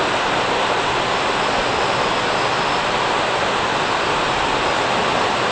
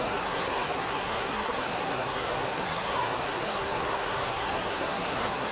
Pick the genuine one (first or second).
first